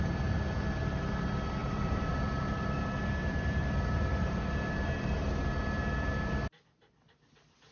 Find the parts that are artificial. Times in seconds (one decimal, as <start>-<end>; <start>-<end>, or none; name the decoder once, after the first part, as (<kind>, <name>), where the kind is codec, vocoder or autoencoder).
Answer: 1.6-6.1 (vocoder, BigVGAN v2)